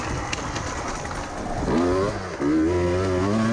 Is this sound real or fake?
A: real